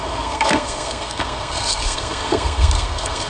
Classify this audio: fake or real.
fake